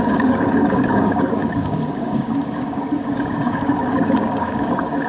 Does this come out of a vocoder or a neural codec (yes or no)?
yes